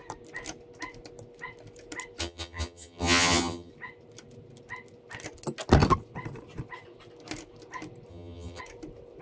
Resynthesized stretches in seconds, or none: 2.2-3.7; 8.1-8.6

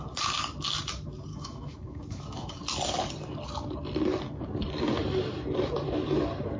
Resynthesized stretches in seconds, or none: 1.3-2.6

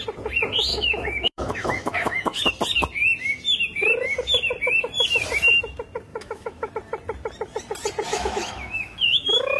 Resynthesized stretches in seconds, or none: 0.7-2.5; 6.1-6.7; 8.1-9.6

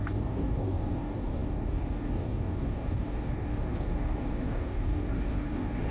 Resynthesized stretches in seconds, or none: 0.0-5.9

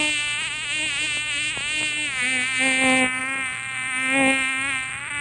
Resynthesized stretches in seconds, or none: 3.2-5.2